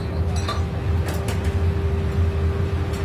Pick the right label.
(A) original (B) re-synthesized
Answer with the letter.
A